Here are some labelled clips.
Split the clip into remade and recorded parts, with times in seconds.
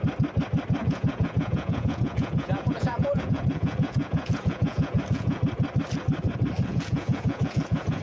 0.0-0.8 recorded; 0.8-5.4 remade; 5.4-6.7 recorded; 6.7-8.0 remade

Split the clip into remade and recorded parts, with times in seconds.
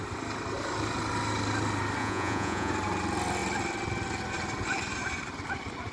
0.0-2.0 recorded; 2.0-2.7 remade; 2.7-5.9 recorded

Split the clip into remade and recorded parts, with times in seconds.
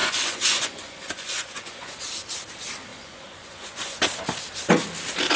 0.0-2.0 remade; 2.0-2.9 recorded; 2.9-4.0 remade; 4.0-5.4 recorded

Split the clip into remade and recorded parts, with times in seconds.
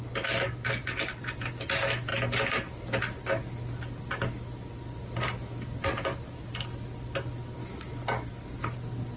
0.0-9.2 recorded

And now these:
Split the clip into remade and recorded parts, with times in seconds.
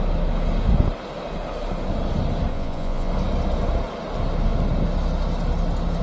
0.0-2.5 recorded; 2.5-3.1 remade; 3.1-6.0 recorded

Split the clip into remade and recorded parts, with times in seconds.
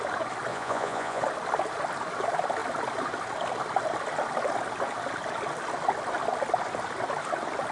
0.0-0.5 recorded; 0.5-1.2 remade; 1.2-7.7 recorded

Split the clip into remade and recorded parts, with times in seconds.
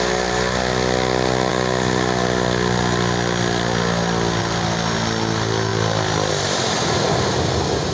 0.0-7.9 recorded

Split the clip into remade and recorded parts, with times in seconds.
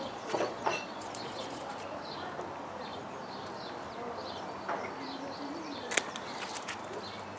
0.0-1.6 remade; 1.6-7.4 recorded